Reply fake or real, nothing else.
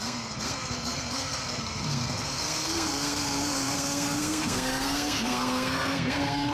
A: fake